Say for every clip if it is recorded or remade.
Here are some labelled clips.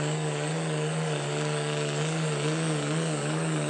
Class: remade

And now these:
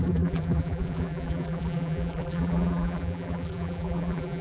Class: remade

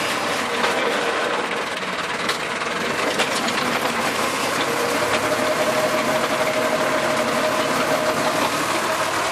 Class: recorded